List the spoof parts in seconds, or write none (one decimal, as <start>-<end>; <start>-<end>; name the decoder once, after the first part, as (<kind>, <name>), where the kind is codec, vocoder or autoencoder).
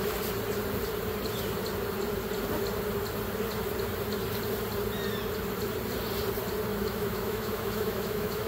6.7-8.5 (autoencoder, DAC-VAE)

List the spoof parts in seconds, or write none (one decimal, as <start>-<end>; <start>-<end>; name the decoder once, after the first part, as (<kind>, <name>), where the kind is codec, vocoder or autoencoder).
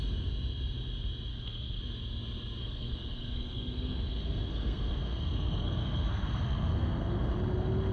1.3-1.8 (codec, SNAC); 2.6-7.3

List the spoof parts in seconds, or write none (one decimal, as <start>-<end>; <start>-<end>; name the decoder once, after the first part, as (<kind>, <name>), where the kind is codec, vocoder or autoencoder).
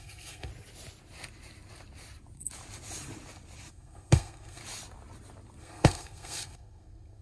0.0-0.5 (codec, SNAC); 3.7-4.6; 5.6-7.2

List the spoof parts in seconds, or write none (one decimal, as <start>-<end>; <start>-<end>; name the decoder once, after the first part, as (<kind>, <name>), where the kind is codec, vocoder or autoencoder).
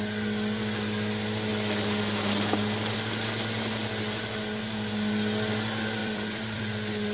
6.0-6.6 (vocoder, BigVGAN v2)